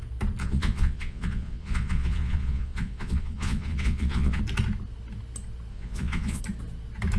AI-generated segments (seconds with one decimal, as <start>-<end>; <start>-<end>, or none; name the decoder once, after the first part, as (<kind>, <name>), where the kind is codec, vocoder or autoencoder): 0.4-4.4 (vocoder, Vocos); 5.7-6.4